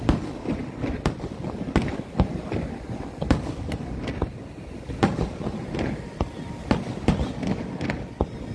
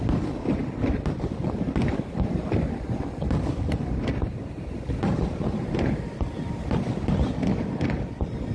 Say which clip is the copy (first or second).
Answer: second